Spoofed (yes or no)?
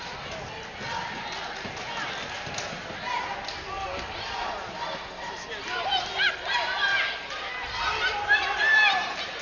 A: no